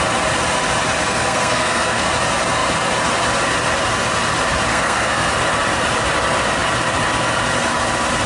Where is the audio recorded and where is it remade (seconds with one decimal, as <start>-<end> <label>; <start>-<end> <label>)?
0.0-1.0 recorded; 1.0-2.1 remade; 2.1-4.7 recorded; 4.7-5.3 remade; 5.3-8.3 recorded